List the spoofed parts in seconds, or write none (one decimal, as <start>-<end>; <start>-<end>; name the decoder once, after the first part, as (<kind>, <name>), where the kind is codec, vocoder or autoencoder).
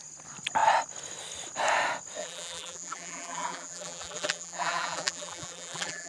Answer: 2.2-6.1 (vocoder, BigVGAN v2)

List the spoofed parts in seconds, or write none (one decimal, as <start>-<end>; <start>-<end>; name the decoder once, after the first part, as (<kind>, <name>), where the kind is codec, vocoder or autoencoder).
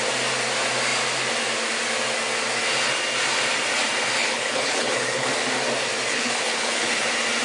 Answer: 4.2-5.3 (codec, HILCodec); 6.1-7.0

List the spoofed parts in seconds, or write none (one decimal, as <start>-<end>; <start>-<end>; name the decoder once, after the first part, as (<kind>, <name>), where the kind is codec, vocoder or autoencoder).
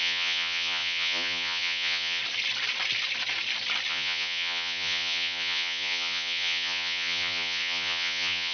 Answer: 0.0-2.2 (vocoder, Vocos); 3.9-8.5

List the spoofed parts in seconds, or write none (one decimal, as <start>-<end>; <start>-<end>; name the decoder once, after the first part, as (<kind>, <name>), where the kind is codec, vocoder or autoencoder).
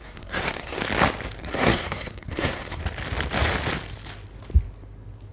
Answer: 0.0-0.8 (codec, SNAC); 1.4-2.8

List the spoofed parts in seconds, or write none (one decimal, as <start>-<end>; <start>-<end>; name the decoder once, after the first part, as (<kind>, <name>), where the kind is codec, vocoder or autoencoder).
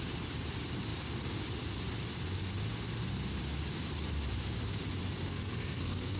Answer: 5.3-6.2 (codec, SNAC)